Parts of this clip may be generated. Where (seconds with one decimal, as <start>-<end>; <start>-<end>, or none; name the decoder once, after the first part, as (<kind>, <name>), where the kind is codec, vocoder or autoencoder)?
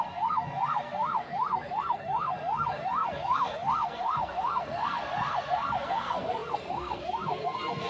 0.0-7.9 (codec, SNAC)